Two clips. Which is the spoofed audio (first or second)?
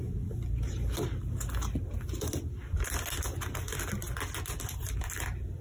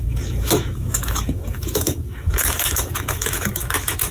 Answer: second